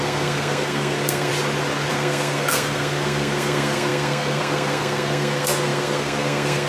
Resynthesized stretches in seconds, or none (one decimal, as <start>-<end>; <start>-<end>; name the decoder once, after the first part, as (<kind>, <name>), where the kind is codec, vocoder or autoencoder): 0.0-1.3 (codec, SNAC); 1.9-6.7